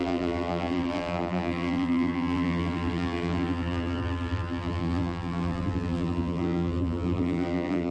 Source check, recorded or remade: remade